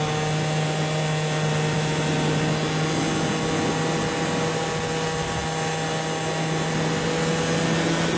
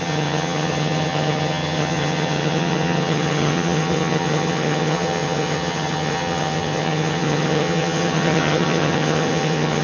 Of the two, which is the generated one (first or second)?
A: second